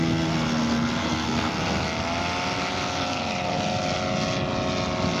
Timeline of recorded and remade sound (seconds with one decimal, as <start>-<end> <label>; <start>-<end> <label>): 0.0-1.0 recorded; 1.0-1.5 remade; 1.5-5.2 recorded